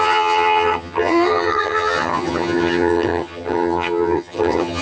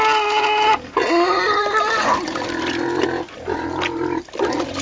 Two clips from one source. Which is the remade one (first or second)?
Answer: first